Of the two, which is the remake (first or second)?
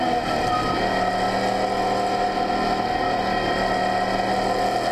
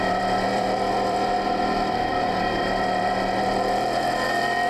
second